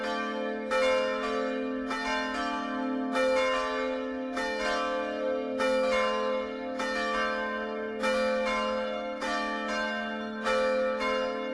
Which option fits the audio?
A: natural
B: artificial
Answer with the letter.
A